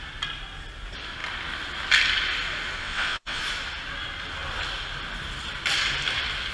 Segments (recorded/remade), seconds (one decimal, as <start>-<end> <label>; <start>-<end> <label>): 0.0-2.8 recorded; 2.8-3.4 remade; 3.4-6.5 recorded